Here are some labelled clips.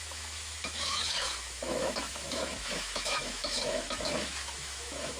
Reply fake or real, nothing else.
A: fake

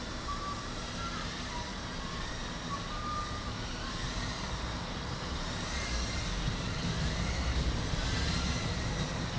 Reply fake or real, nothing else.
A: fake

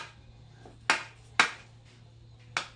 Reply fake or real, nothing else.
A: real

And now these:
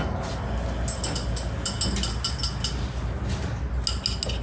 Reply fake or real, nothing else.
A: real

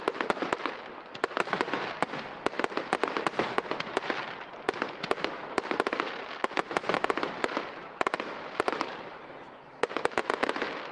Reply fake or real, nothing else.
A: real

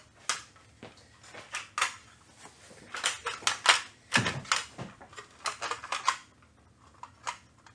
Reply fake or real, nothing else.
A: real